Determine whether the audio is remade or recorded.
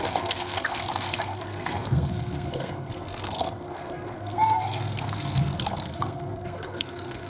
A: remade